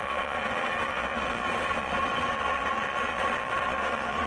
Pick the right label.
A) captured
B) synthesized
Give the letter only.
B